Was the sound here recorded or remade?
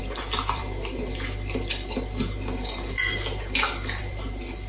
remade